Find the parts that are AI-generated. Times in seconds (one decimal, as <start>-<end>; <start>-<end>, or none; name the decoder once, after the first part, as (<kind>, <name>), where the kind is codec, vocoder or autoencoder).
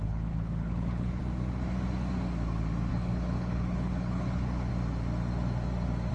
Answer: 0.0-1.2 (codec, HILCodec); 2.9-4.7